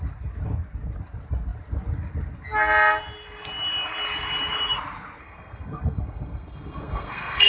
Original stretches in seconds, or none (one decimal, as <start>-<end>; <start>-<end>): 0.0-5.2